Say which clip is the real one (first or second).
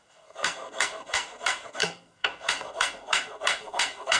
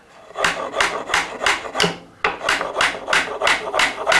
second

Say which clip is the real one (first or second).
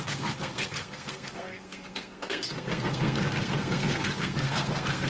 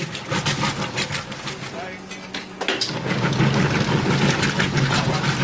second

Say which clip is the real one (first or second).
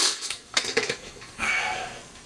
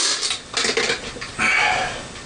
second